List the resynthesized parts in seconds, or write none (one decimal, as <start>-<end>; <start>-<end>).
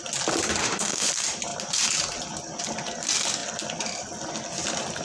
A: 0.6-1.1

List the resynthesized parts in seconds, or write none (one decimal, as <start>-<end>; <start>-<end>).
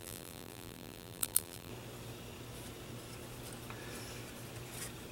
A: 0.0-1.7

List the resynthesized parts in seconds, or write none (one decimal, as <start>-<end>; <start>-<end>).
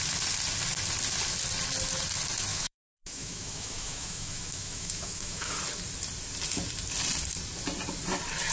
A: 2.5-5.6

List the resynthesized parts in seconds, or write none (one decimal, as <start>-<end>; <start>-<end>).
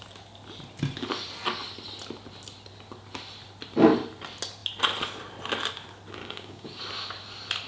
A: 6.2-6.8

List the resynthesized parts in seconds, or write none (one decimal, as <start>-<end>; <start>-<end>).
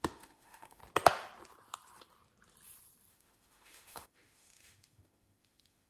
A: 0.0-0.8; 3.1-5.9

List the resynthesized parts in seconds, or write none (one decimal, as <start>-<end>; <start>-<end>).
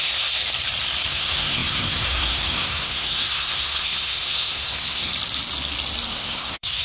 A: 0.0-0.4; 1.1-5.1; 6.1-6.8